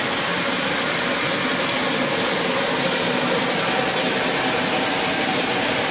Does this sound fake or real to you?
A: real